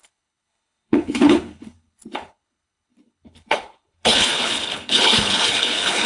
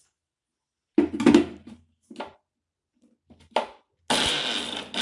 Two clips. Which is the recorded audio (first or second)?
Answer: second